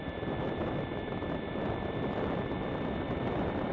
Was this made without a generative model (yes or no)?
no